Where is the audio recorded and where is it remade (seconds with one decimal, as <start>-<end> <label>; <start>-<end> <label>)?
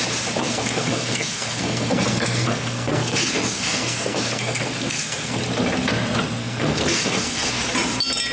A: 0.0-0.4 recorded; 0.4-5.4 remade; 5.4-6.4 recorded; 6.4-7.5 remade; 7.5-8.3 recorded